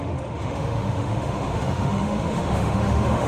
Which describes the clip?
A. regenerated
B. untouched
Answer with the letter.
A